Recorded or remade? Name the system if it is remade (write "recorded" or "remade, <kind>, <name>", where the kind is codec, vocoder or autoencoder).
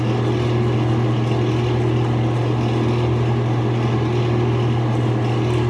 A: recorded